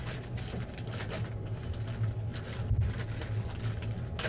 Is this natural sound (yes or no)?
yes